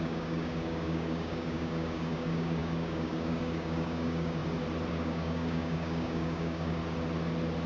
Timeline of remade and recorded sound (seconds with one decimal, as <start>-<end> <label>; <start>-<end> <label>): 0.0-4.4 remade; 4.4-4.9 recorded; 4.9-6.8 remade; 6.8-7.7 recorded